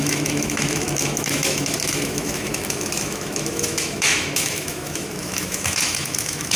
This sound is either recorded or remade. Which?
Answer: remade